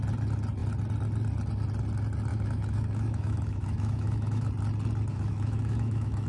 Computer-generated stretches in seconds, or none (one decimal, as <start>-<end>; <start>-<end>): 2.3-4.5; 5.1-6.3